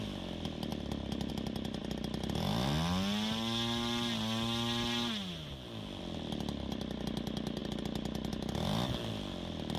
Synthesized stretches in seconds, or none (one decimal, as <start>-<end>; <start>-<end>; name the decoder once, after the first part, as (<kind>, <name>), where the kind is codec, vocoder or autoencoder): none